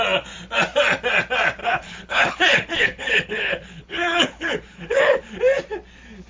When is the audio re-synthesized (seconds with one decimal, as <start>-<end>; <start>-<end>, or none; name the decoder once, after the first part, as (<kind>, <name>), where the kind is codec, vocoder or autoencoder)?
1.6-5.4 (codec, HILCodec)